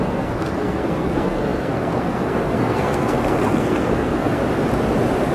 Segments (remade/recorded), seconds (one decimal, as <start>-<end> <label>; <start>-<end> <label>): 0.0-4.4 remade; 4.4-5.3 recorded